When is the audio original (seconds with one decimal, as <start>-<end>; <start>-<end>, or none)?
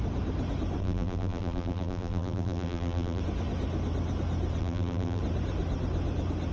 0.0-0.8; 3.2-4.6; 5.2-6.5